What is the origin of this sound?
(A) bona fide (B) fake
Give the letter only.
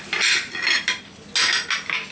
A